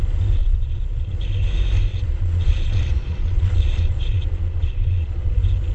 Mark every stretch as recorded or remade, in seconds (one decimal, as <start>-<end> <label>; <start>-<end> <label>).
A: 0.0-0.4 recorded; 0.4-1.2 remade; 1.2-1.9 recorded; 1.9-5.3 remade; 5.3-5.7 recorded